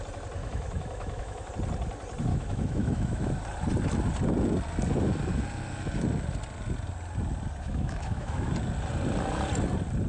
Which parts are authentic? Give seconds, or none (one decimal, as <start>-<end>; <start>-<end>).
0.0-0.4; 1.5-2.3; 3.4-7.7; 8.5-10.1